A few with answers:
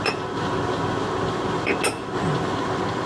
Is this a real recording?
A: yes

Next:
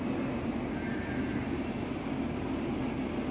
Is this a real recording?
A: yes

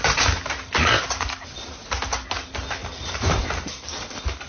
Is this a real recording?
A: yes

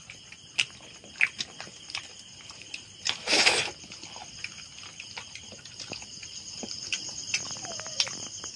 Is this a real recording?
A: yes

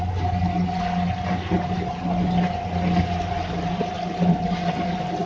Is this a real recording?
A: yes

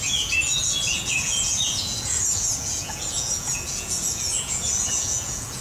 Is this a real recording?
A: no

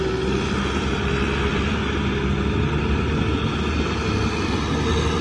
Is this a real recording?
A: yes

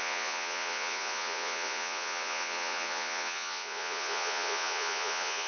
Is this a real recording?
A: no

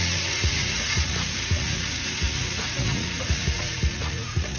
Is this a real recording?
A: no